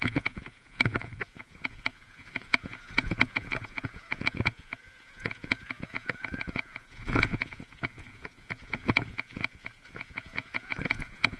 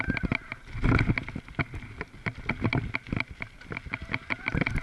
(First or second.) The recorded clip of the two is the second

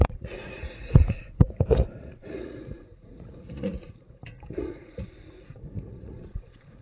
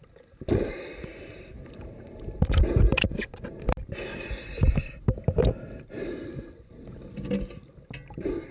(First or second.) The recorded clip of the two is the second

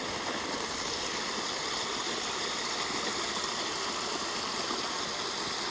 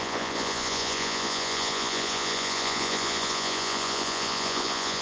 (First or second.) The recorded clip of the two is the first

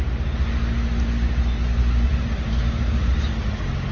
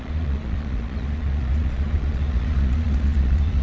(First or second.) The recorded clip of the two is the first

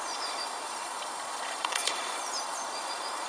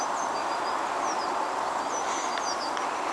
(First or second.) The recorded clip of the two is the second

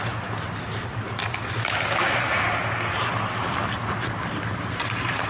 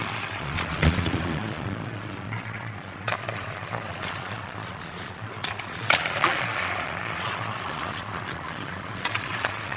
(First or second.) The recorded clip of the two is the first